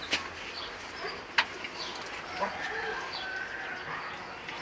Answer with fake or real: real